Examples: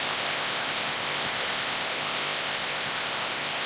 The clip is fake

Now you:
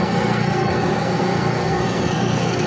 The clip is fake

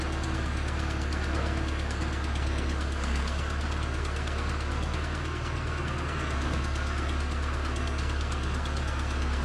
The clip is fake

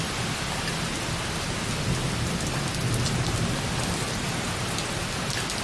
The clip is real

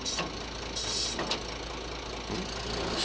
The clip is real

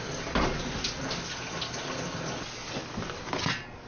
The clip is real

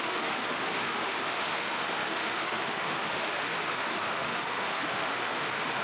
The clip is fake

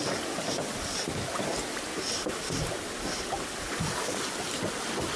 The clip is real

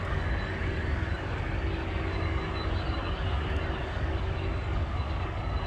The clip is fake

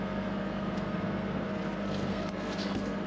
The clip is fake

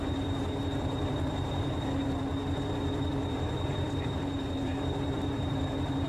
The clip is fake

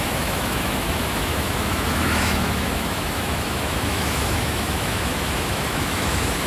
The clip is fake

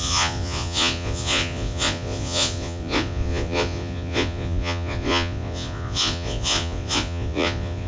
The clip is fake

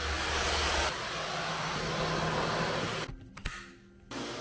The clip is real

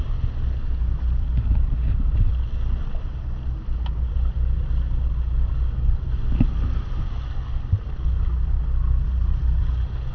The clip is real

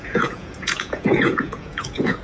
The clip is fake